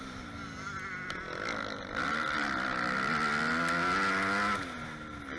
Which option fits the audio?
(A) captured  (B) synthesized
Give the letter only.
A